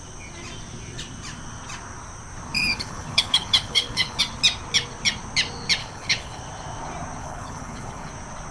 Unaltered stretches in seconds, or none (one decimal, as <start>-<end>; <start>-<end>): 0.0-2.7; 4.2-5.8; 6.4-7.2; 8.1-8.5